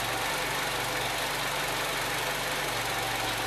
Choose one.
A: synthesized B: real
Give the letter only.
B